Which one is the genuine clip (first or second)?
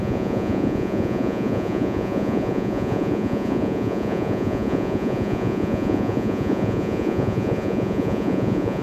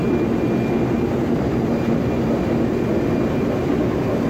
second